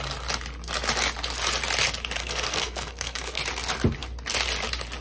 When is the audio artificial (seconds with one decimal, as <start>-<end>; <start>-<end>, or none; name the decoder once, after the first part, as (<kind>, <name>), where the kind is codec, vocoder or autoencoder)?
2.2-3.4 (codec, SNAC)